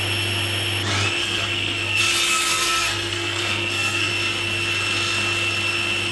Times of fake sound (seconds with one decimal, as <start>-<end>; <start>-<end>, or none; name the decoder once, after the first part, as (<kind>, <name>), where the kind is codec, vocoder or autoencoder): 1.2-2.0 (codec, SNAC); 2.5-4.1